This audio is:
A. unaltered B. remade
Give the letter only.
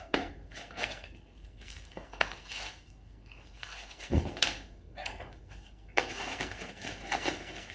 B